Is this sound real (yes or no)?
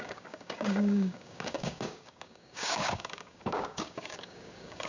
no